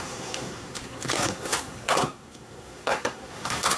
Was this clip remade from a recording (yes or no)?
yes